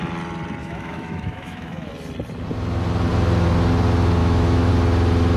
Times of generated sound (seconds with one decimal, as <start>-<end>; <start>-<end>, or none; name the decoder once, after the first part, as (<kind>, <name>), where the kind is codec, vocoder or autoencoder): 0.6-1.9 (autoencoder, DAC-VAE); 4.2-4.7